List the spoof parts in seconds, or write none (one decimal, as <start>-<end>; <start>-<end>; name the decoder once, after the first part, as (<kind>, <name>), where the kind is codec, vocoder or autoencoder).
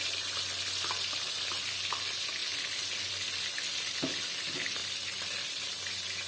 none